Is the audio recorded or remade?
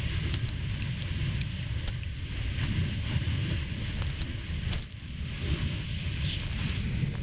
recorded